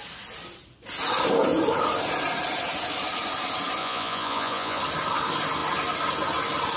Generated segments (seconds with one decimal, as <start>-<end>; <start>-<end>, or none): 3.8-4.8